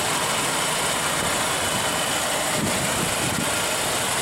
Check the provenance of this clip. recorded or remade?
recorded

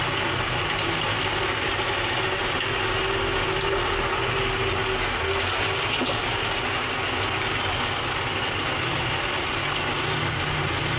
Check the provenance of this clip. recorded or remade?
recorded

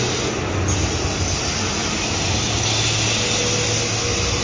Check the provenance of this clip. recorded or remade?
recorded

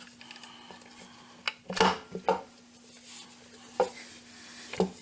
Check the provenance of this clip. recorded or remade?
recorded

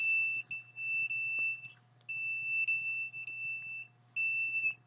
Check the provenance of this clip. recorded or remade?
recorded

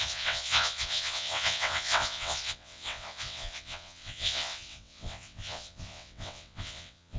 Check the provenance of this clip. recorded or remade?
remade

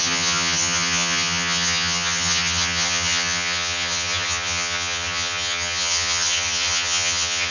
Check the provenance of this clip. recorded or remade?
remade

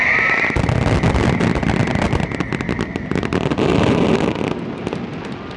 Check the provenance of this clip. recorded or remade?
recorded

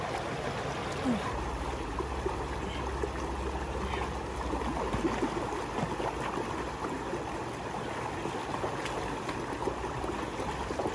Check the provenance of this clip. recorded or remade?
recorded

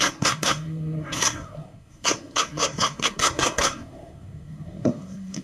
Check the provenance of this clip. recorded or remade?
remade